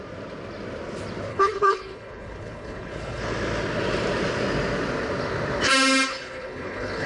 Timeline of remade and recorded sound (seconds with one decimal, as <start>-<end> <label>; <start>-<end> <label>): 0.0-1.3 recorded; 1.3-3.2 remade; 3.2-6.1 recorded; 6.1-7.1 remade